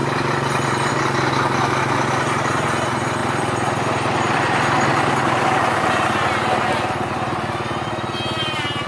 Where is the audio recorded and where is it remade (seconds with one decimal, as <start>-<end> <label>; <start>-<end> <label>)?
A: 0.0-0.9 remade; 0.9-3.2 recorded; 3.2-4.9 remade; 4.9-8.9 recorded